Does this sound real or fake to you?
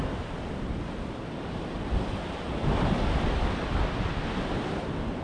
real